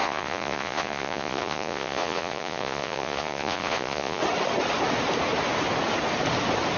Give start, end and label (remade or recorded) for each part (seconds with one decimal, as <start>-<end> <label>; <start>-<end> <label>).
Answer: 0.0-4.2 remade; 4.2-6.8 recorded